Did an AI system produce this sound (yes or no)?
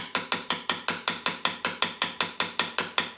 no